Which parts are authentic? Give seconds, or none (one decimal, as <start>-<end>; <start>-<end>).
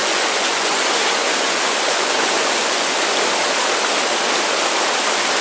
3.2-5.4